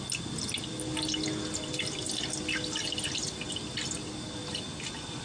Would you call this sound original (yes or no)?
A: yes